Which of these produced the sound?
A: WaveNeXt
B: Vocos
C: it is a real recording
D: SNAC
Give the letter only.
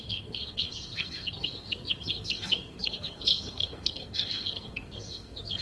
D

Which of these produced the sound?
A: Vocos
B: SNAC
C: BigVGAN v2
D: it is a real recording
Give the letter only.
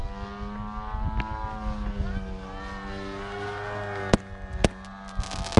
D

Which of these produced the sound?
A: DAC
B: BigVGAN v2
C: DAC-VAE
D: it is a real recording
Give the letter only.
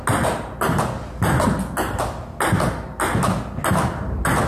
D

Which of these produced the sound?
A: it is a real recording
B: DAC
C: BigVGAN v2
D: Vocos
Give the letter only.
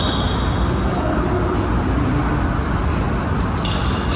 A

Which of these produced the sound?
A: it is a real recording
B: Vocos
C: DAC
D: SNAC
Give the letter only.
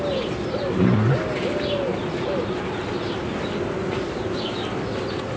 A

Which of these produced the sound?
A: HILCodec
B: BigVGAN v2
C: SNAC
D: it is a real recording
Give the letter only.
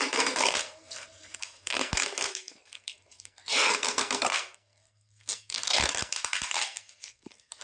C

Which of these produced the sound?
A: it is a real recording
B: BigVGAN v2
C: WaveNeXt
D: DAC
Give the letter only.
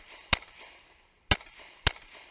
A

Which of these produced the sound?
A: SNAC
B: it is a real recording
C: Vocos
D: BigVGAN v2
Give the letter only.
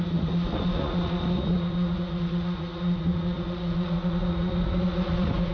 C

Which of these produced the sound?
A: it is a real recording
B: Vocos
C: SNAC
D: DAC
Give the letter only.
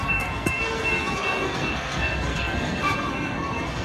C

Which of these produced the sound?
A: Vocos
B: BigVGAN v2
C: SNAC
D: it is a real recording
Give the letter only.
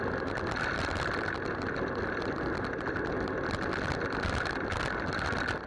D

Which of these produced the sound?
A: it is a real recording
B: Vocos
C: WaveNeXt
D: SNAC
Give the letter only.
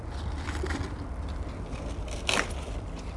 A